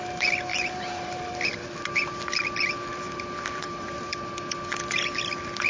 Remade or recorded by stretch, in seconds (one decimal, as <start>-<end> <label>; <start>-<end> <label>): 0.0-0.5 recorded; 0.5-1.3 remade; 1.3-2.9 recorded; 2.9-4.2 remade; 4.2-5.7 recorded

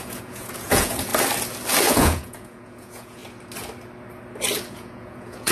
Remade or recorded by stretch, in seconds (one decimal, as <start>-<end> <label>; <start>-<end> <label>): 0.0-1.1 remade; 1.1-1.9 recorded; 1.9-3.2 remade; 3.2-4.7 recorded; 4.7-5.5 remade

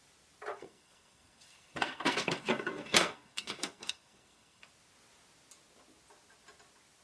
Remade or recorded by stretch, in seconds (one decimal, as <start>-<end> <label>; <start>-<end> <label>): 0.0-0.5 recorded; 0.5-4.7 remade; 4.7-7.0 recorded

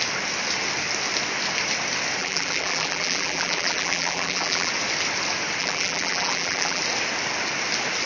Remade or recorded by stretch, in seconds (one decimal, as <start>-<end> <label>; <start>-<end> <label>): 0.0-2.2 recorded; 2.2-4.7 remade; 4.7-5.6 recorded; 5.6-6.8 remade; 6.8-8.1 recorded

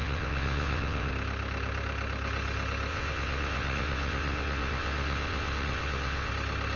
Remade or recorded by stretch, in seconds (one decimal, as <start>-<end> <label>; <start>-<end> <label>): 0.0-1.1 remade; 1.1-2.9 recorded; 2.9-6.3 remade; 6.3-6.8 recorded

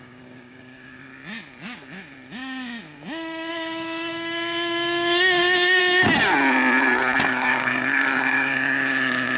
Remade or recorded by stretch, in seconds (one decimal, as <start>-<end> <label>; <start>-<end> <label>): 0.0-1.1 remade; 1.1-3.5 recorded; 3.5-5.8 remade; 5.8-7.3 recorded; 7.3-9.4 remade